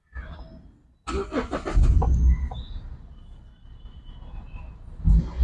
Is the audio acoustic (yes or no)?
yes